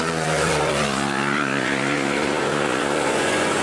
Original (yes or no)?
no